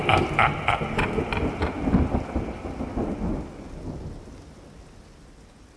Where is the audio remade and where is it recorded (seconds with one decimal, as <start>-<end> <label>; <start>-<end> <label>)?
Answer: 0.0-5.8 recorded